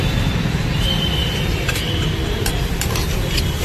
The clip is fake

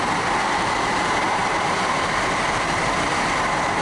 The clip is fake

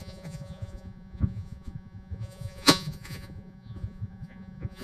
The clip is fake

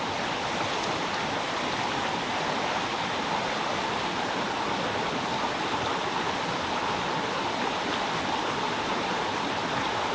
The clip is real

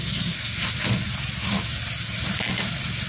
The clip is real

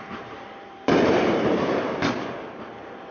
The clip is fake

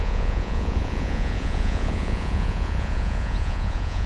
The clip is fake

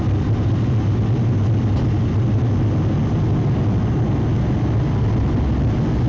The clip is real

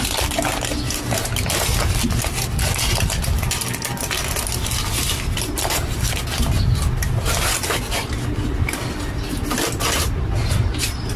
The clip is real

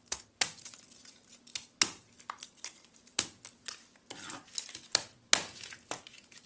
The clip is real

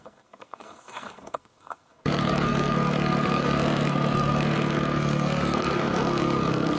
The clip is fake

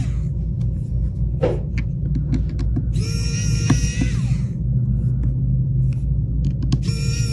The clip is real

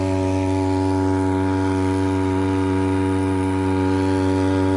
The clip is real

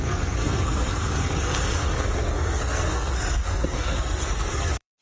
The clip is fake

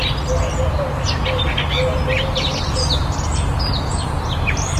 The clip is real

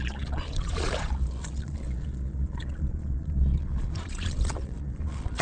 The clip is fake